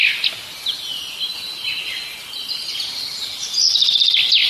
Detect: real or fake real